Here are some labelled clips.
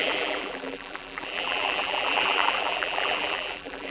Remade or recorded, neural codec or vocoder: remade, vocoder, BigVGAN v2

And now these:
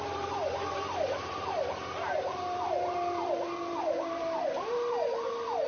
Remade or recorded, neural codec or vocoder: remade, vocoder, BigVGAN v2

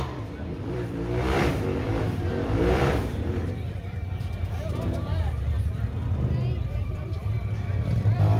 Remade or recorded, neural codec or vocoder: remade, vocoder, BigVGAN v2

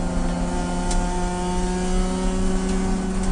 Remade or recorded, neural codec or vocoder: recorded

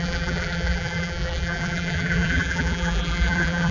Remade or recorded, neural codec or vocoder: remade, vocoder, BigVGAN v2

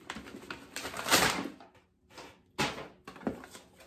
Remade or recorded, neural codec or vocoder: recorded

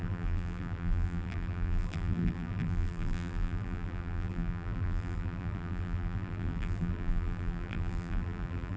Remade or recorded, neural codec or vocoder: remade, vocoder, BigVGAN v2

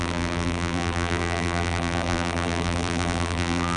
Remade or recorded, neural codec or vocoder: remade, vocoder, BigVGAN v2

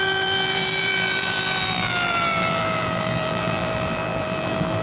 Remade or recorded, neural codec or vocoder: remade, vocoder, BigVGAN v2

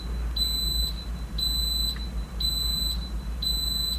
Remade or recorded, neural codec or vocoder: recorded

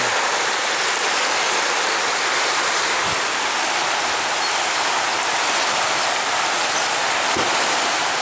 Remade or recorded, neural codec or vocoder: recorded